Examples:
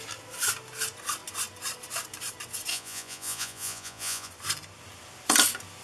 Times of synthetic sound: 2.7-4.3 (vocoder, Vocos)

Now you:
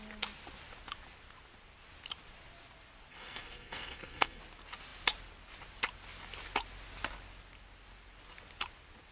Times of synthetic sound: 3.1-4.4 (codec, SNAC)

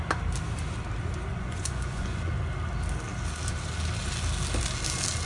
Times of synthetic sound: 1.3-2.3 (vocoder, Vocos)

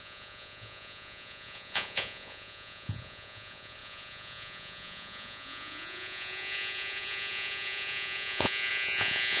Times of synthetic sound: 0.0-9.4 (vocoder, Vocos)